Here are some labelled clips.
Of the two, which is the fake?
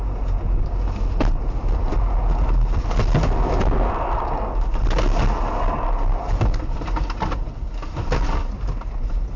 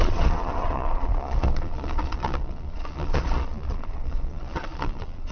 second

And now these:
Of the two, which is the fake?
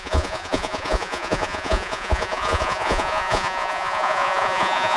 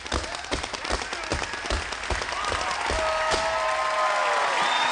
first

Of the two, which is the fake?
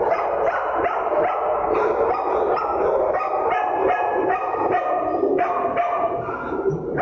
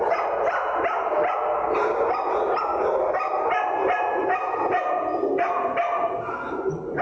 first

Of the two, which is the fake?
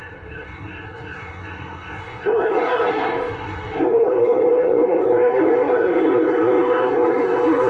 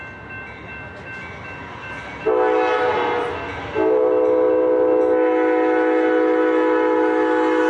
first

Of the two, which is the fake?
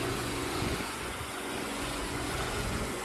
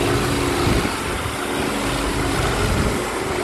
first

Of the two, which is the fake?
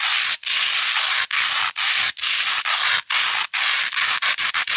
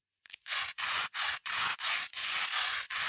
second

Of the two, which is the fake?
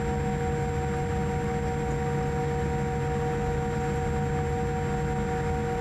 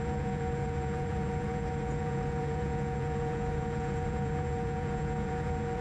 second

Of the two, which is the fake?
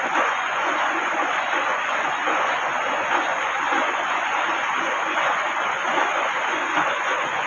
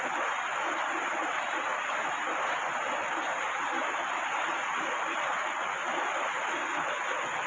first